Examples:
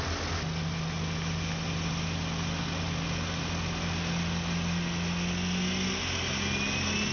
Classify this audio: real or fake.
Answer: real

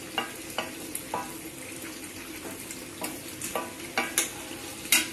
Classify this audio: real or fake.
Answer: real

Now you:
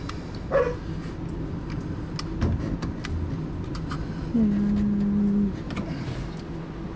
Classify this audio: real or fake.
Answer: real